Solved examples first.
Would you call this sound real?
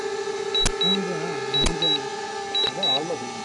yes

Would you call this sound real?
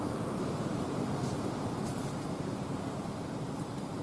no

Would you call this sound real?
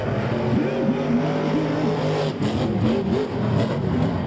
yes